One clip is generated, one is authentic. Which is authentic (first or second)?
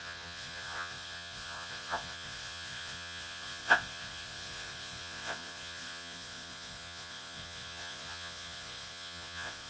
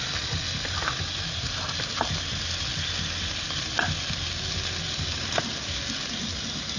second